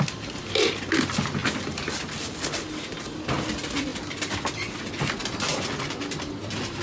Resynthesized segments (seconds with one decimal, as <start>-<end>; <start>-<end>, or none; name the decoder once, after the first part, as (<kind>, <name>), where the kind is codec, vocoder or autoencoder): 1.4-2.2 (vocoder, BigVGAN v2)